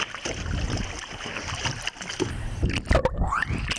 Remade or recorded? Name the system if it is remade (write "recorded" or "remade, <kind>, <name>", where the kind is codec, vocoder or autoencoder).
recorded